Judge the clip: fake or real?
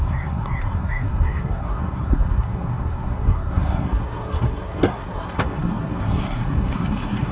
fake